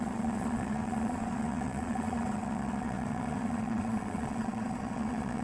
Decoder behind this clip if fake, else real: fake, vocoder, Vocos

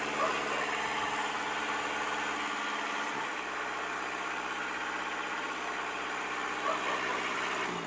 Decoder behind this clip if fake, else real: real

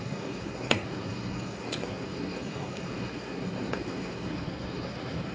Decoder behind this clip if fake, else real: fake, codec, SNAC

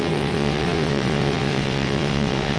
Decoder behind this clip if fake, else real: fake, vocoder, WaveNeXt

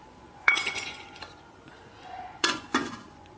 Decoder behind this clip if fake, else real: fake, vocoder, Vocos